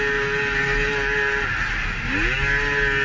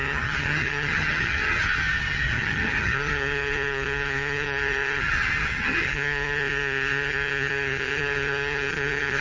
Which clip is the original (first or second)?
first